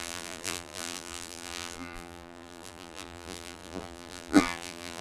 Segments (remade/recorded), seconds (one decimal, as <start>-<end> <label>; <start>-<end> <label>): 0.0-5.0 remade